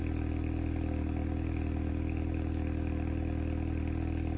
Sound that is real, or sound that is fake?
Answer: real